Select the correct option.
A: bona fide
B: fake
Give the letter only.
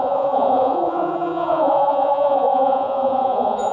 B